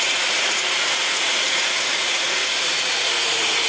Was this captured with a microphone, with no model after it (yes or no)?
no